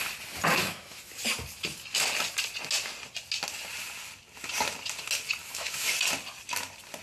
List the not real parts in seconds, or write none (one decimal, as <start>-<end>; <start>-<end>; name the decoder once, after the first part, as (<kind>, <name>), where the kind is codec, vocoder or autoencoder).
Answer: 0.6-1.1 (autoencoder, DAC-VAE); 5.4-5.9